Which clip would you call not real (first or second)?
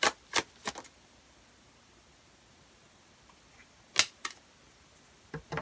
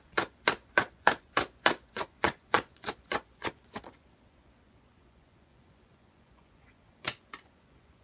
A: second